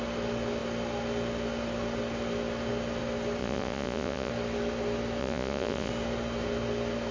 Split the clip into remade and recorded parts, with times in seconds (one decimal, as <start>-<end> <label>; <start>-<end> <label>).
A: 0.0-3.4 recorded; 3.4-4.3 remade; 4.3-5.2 recorded; 5.2-5.9 remade; 5.9-7.1 recorded